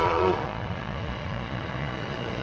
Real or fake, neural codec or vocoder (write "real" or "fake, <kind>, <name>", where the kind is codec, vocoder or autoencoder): fake, vocoder, Vocos